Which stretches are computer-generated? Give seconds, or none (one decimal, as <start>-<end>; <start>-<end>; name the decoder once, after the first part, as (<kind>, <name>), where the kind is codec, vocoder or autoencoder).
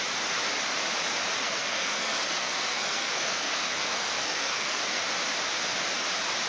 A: 1.4-5.0 (codec, SNAC)